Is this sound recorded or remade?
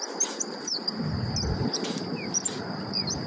recorded